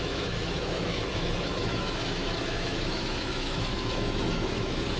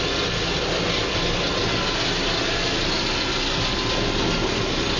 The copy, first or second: first